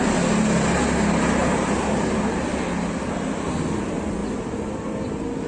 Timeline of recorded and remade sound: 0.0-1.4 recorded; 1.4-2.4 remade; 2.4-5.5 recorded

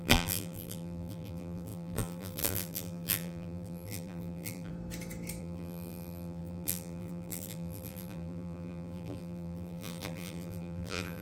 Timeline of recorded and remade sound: 0.0-4.7 remade; 4.7-5.4 recorded; 5.4-11.2 remade

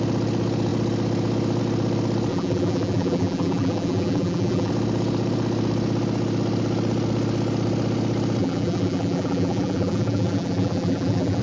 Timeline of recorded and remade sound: 0.0-2.3 recorded; 2.3-4.7 remade; 4.7-8.4 recorded; 8.4-11.4 remade

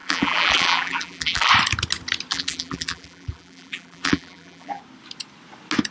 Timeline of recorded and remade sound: 0.0-1.5 remade; 1.5-2.3 recorded; 2.3-4.8 remade; 4.8-5.9 recorded

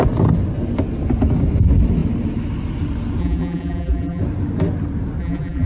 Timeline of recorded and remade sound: 0.0-3.2 recorded; 3.2-4.2 remade; 4.2-5.2 recorded; 5.2-5.7 remade

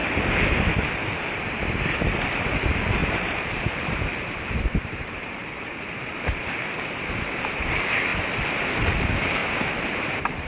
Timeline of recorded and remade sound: 0.0-2.3 recorded; 2.3-8.1 remade; 8.1-8.9 recorded; 8.9-10.5 remade

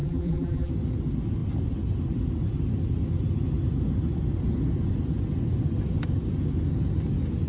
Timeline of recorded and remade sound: 0.0-0.7 remade; 0.7-7.5 recorded